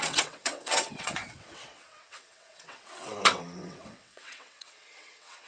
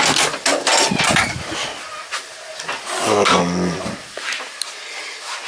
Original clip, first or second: second